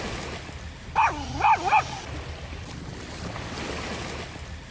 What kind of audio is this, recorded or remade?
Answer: recorded